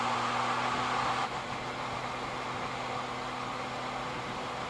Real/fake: real